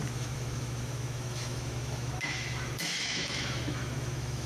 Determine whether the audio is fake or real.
fake